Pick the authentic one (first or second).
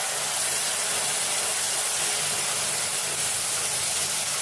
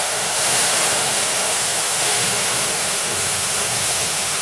first